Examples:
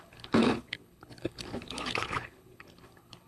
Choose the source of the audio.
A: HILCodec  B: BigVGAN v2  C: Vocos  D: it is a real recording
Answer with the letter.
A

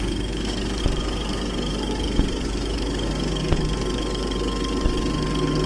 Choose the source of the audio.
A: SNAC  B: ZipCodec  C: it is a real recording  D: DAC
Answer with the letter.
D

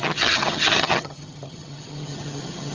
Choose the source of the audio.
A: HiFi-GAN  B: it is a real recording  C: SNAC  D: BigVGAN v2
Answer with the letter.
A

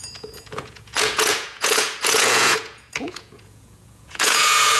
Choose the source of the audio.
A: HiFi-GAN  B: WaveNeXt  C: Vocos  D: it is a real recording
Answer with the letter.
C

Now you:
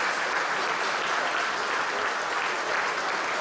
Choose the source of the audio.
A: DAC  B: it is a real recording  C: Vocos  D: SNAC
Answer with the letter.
B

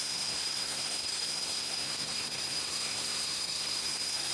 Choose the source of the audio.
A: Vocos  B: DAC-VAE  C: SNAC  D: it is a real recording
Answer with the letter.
C